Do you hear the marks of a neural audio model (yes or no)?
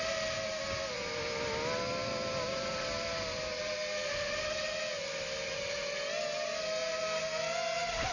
no